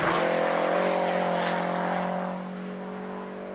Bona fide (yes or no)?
yes